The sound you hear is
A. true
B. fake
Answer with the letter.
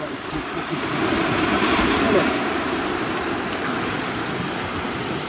B